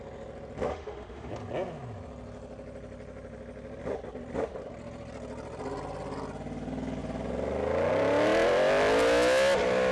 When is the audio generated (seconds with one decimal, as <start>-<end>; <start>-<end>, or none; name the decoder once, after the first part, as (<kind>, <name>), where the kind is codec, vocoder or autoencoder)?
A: 0.7-1.3 (autoencoder, DAC-VAE)